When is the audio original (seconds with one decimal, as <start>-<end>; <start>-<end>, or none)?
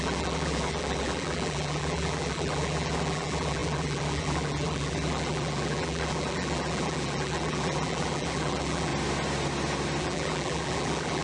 8.9-10.0